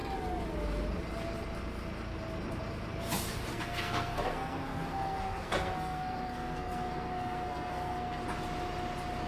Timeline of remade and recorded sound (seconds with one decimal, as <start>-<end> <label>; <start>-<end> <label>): 0.0-3.5 recorded; 3.5-8.2 remade; 8.2-9.3 recorded